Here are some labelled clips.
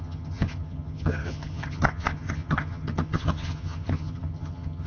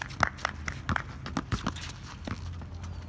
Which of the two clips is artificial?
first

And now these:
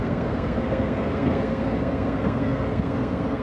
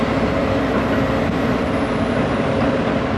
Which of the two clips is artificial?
first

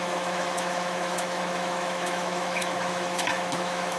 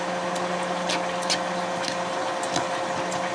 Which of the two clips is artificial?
first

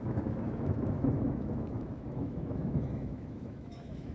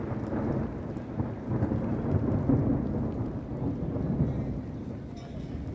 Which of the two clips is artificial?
first